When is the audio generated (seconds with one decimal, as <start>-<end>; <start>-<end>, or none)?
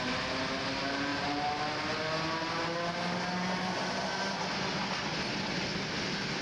1.1-1.8